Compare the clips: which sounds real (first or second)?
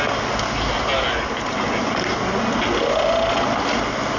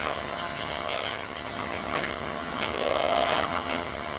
first